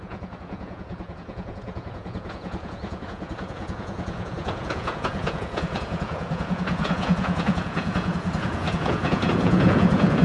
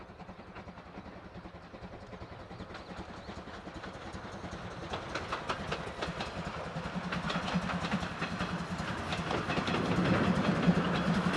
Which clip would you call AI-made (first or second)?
first